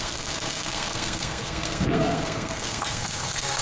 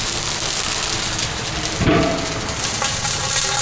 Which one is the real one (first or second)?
second